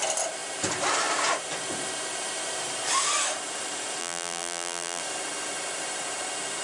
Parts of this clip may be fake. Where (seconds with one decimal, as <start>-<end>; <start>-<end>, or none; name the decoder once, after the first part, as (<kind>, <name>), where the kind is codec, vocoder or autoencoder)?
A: 4.0-5.0 (vocoder, BigVGAN v2)